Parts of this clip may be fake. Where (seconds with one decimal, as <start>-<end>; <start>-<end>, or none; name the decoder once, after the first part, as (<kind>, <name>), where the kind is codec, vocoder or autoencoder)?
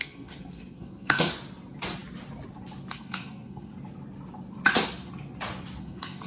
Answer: 0.0-1.3 (codec, SNAC); 2.9-3.7; 5.8-6.3